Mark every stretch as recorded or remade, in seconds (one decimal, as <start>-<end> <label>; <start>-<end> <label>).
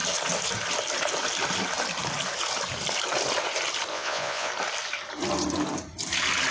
0.0-3.9 recorded; 3.9-4.5 remade; 4.5-6.5 recorded